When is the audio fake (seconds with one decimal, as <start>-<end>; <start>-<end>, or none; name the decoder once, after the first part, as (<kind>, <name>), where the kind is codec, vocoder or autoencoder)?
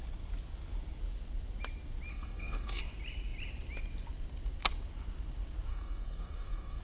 2.1-2.8 (codec, SNAC); 5.7-6.8